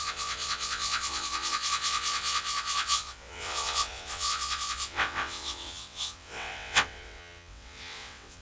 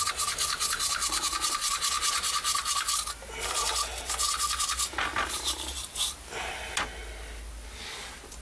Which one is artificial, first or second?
first